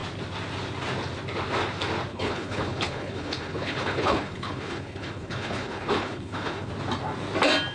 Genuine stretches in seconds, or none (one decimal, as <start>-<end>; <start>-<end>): 0.0-2.1; 6.7-7.7